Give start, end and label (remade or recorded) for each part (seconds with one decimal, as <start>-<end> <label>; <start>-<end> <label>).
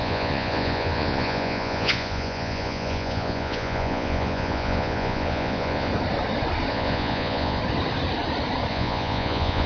0.0-5.9 remade; 5.9-6.7 recorded; 6.7-7.6 remade; 7.6-8.7 recorded; 8.7-9.7 remade